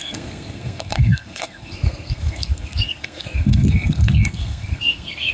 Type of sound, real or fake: fake